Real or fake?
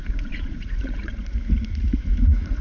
fake